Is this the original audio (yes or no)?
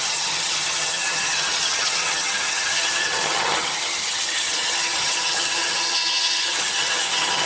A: no